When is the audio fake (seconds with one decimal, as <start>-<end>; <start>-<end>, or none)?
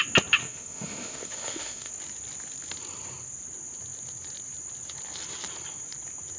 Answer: 0.4-1.9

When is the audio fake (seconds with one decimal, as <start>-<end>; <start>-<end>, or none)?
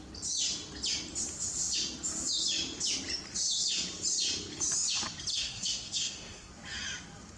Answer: 5.3-6.5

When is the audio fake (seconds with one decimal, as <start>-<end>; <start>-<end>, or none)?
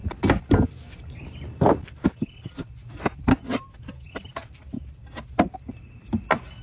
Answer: 0.5-4.4; 5.7-6.6